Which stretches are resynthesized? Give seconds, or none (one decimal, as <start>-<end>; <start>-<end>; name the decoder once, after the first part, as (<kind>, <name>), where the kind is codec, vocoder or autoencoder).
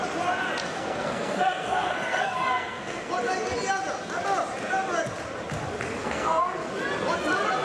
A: 0.6-3.1 (codec, SNAC); 6.0-6.7